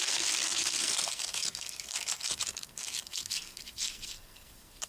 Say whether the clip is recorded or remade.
remade